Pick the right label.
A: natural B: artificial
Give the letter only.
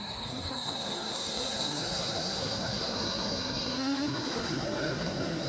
B